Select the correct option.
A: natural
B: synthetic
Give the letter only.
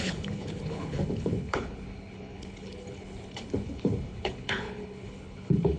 B